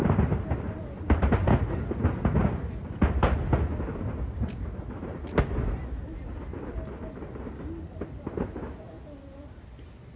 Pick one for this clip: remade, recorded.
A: recorded